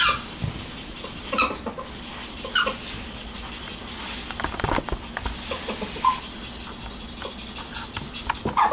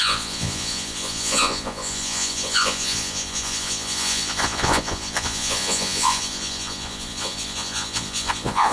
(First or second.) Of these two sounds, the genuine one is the first